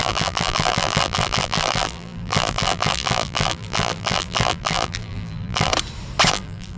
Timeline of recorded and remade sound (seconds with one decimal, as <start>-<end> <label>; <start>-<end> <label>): 0.0-5.7 remade; 5.7-6.3 recorded; 6.3-6.8 remade